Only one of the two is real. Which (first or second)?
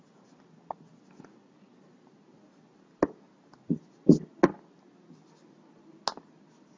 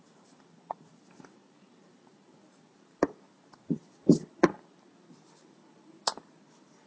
first